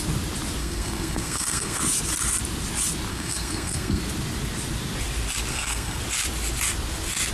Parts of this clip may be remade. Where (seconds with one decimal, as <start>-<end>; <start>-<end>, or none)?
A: 0.6-1.8; 3.1-4.0; 5.5-6.0